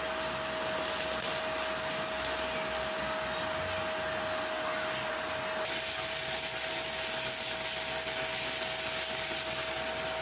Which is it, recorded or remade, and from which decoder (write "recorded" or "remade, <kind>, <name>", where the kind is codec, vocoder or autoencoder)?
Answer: recorded